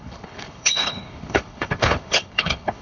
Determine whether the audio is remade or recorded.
remade